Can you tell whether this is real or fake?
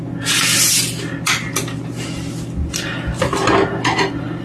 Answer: real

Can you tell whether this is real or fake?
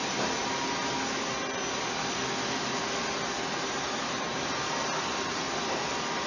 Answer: real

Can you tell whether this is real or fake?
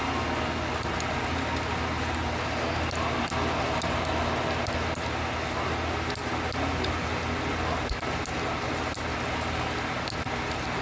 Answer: real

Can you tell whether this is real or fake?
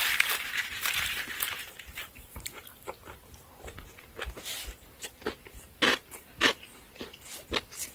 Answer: fake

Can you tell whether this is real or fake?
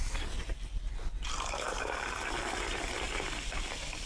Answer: real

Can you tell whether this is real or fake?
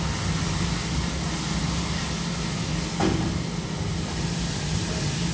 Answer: real